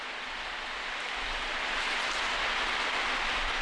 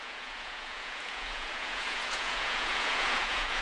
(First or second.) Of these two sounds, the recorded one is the first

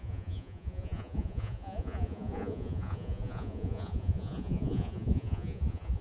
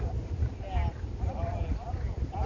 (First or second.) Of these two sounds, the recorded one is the second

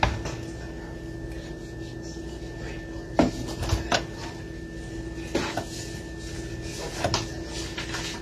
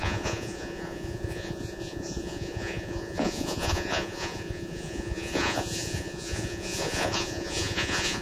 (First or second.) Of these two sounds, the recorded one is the first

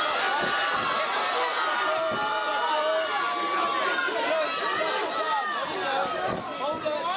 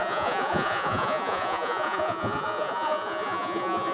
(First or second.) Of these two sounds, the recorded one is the first